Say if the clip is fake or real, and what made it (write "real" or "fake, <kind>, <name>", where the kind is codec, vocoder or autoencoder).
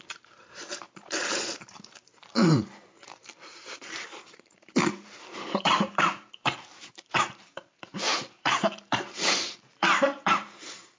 fake, vocoder, BigVGAN v2